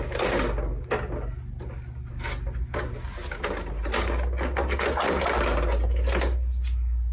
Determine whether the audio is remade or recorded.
recorded